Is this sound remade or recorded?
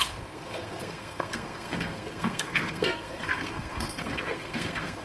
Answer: remade